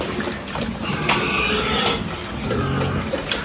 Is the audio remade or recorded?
recorded